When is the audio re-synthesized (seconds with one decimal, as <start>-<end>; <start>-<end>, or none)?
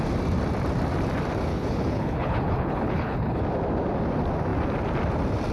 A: 1.5-3.4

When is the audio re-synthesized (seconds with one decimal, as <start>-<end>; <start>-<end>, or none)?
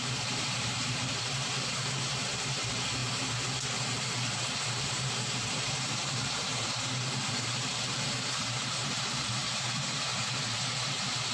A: 0.0-3.0; 4.8-6.5; 7.1-10.1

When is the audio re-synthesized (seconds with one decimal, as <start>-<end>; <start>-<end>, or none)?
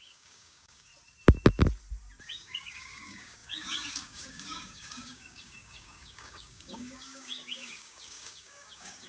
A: 0.0-0.9; 2.2-9.1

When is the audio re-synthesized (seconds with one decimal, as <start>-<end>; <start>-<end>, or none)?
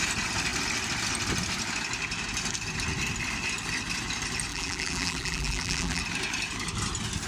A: 4.5-6.0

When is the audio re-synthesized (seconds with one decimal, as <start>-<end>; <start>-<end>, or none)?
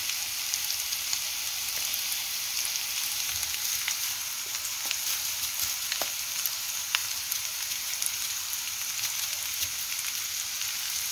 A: 7.0-8.9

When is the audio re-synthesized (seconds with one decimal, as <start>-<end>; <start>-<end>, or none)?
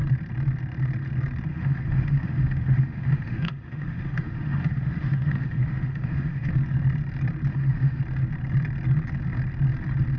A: 1.5-6.5; 7.5-8.0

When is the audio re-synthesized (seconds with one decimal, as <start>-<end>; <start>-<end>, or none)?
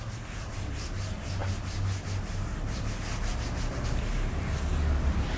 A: none